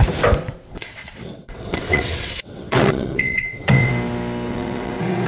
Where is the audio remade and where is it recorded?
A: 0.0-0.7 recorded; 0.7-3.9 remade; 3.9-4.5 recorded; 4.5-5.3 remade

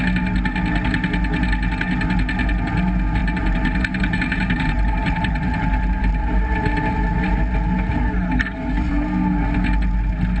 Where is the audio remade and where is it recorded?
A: 0.0-3.2 recorded; 3.2-7.4 remade; 7.4-7.9 recorded; 7.9-8.9 remade; 8.9-10.4 recorded

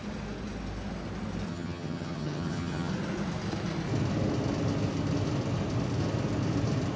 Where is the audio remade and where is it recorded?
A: 0.0-1.5 recorded; 1.5-2.9 remade; 2.9-7.0 recorded

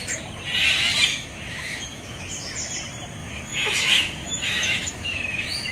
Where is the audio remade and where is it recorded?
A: 0.0-1.1 recorded; 1.1-2.2 remade; 2.2-3.2 recorded; 3.2-5.7 remade

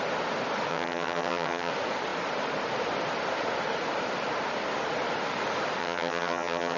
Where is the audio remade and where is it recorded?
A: 0.0-0.7 recorded; 0.7-1.7 remade; 1.7-5.8 recorded; 5.8-6.8 remade

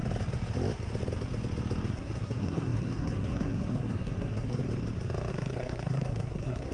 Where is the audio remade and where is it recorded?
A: 0.0-1.9 recorded; 1.9-4.6 remade; 4.6-5.3 recorded; 5.3-6.7 remade

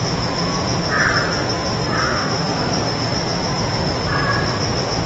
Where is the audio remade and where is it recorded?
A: 0.0-2.0 recorded; 2.0-2.6 remade; 2.6-5.1 recorded